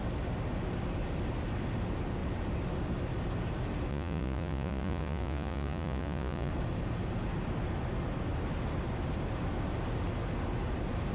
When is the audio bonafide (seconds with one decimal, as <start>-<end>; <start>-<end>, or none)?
0.0-3.9; 6.5-11.1